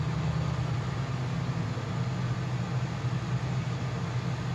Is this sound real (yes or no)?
yes